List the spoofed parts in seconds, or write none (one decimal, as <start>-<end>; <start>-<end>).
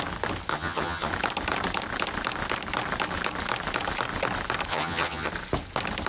0.5-1.1; 4.7-5.3